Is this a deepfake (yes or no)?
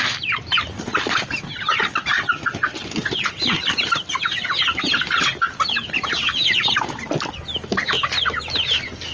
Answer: no